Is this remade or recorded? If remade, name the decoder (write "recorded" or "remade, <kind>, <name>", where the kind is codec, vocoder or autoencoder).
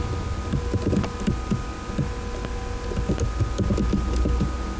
recorded